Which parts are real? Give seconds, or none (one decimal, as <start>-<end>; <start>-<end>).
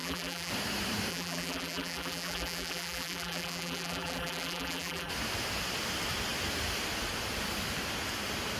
0.5-1.1; 5.1-8.6